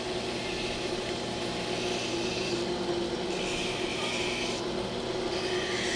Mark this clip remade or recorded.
recorded